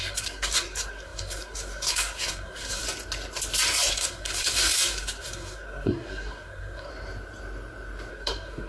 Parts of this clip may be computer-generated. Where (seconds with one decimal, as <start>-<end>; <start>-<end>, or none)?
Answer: 0.0-2.8; 3.9-6.9; 8.1-8.7